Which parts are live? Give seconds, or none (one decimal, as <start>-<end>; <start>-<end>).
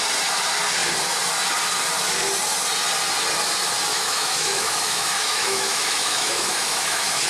0.0-3.9